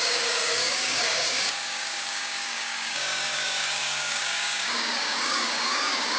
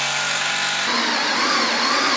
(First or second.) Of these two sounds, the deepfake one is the first